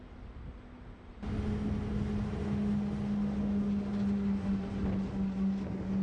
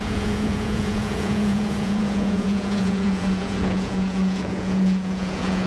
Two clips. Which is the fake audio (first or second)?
second